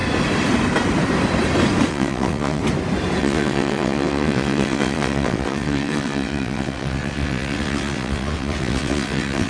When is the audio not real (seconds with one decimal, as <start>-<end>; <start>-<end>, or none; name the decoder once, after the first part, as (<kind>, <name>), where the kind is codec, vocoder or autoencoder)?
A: 1.9-2.6 (vocoder, WaveNeXt); 3.2-9.5